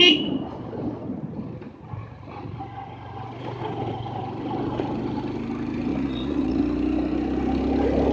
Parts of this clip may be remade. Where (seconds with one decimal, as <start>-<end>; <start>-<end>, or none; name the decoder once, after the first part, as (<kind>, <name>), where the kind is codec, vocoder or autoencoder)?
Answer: 2.0-2.6 (vocoder, Vocos); 5.9-6.6